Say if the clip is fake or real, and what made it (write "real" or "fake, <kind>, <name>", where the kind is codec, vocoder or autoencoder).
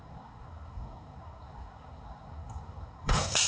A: fake, codec, SNAC